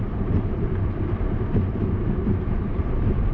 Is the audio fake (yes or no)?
yes